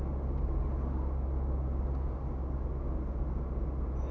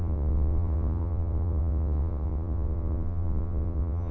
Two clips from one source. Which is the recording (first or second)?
first